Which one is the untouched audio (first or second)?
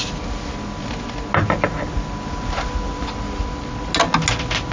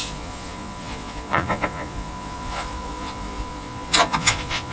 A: first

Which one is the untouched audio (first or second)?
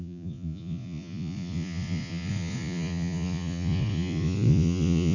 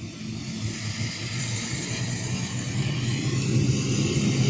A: second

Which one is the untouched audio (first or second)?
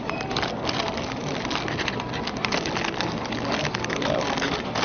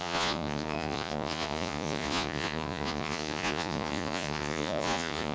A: first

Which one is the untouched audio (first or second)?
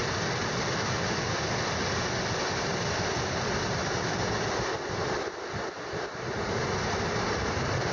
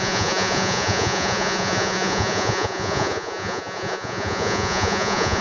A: first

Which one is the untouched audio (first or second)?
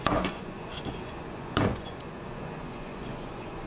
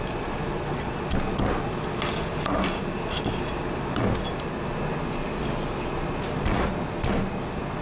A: second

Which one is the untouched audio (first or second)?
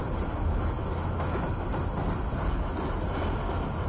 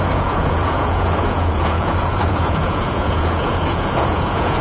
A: first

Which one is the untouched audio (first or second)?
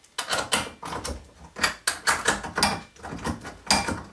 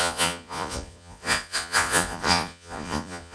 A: first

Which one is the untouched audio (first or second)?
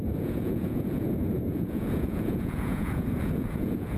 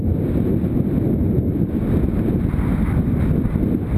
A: second